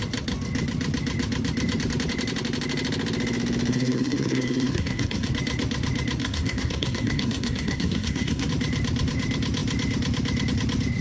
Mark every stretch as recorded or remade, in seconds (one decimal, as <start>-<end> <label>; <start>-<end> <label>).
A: 0.0-3.7 recorded; 3.7-5.3 remade; 5.3-6.2 recorded; 6.2-8.5 remade; 8.5-11.0 recorded